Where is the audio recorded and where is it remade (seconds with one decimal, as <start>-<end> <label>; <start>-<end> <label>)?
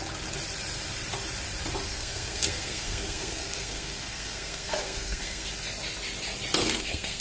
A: 0.0-1.9 recorded; 1.9-5.5 remade; 5.5-6.6 recorded; 6.6-7.2 remade